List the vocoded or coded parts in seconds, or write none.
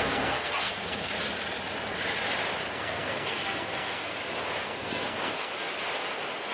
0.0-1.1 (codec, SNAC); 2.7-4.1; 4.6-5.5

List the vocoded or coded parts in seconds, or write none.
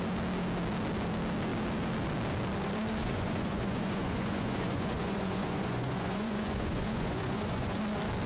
3.0-7.8 (vocoder, Vocos)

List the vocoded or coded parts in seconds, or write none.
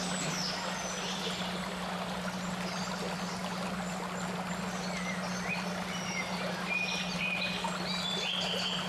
none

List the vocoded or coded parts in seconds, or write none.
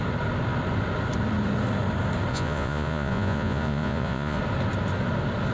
2.3-4.4 (vocoder, Vocos)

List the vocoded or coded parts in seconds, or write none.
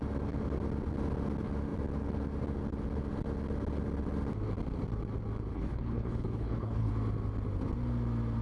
5.5-6.9 (codec, HILCodec)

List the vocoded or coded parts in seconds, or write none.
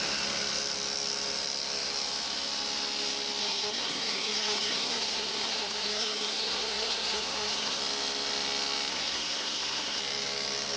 3.4-7.8 (codec, SNAC); 8.9-10.0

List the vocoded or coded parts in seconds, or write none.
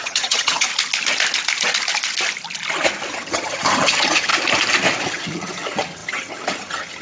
0.0-0.7 (vocoder, HiFi-GAN); 3.1-4.3; 5.0-7.0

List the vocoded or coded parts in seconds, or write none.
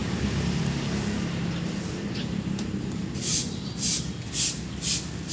0.0-0.6 (vocoder, BigVGAN v2); 2.2-3.9